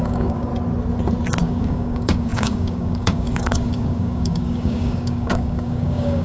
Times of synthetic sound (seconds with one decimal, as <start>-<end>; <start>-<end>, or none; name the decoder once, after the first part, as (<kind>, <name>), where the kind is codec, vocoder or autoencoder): 0.0-0.5 (codec, DAC); 1.4-6.2